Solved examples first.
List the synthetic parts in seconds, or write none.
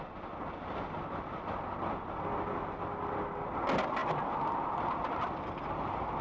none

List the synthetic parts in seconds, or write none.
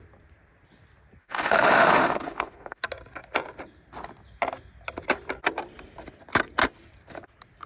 1.2-2.8 (autoencoder, DAC-VAE)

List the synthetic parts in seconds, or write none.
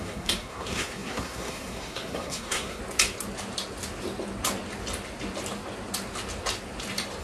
0.0-2.8 (codec, SNAC)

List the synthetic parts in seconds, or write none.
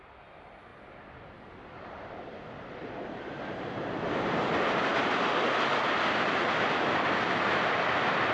none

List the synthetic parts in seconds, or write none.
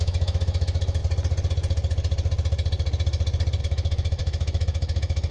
0.0-1.0 (autoencoder, DAC-VAE); 3.6-5.3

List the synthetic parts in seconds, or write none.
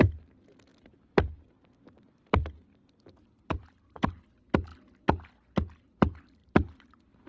0.7-4.2 (vocoder, BigVGAN v2); 6.4-7.3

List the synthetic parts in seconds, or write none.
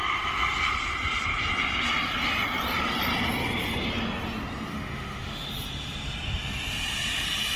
4.7-5.5 (autoencoder, DAC-VAE)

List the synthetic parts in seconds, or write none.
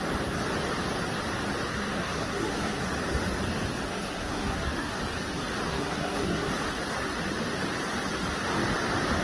1.7-2.8 (codec, SNAC); 3.9-4.9; 5.7-6.5